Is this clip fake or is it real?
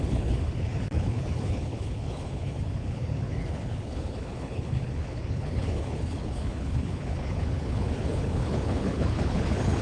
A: fake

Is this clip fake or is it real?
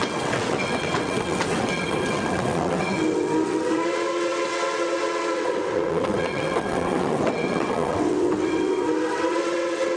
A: fake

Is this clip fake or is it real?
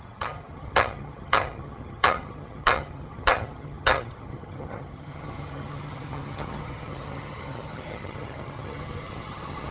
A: fake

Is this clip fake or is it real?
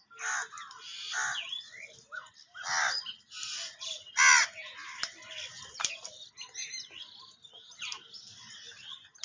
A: real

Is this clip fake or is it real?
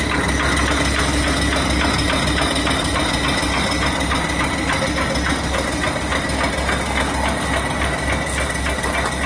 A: real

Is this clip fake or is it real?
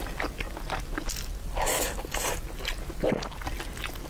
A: real